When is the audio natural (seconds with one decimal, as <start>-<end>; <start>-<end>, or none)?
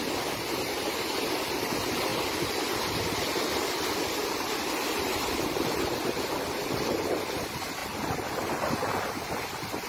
0.0-9.9